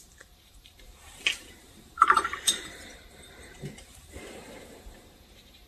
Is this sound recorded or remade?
remade